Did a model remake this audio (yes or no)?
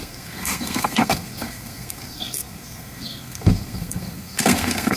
yes